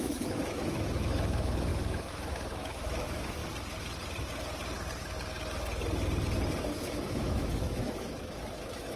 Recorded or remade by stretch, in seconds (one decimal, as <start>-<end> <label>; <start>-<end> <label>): 0.0-3.4 remade; 3.4-6.6 recorded; 6.6-9.0 remade